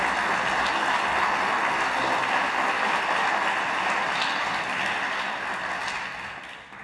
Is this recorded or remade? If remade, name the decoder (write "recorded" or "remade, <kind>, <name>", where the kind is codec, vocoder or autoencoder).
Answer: recorded